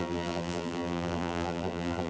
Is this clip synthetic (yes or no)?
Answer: yes